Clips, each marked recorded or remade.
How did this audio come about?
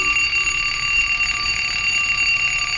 remade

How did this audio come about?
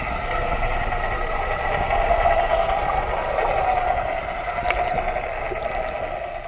recorded